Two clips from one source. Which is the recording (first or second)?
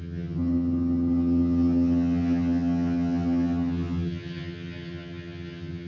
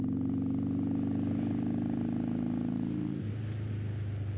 second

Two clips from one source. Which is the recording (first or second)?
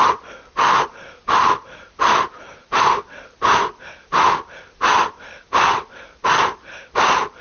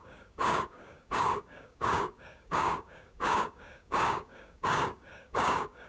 first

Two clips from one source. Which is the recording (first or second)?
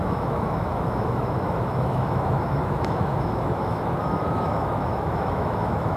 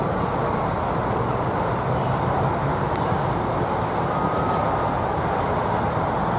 second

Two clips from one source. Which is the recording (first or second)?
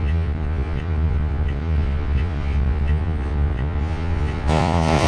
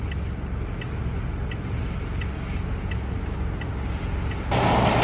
second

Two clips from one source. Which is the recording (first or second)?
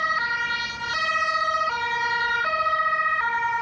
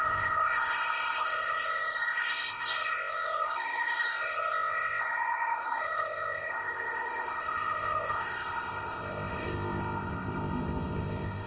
first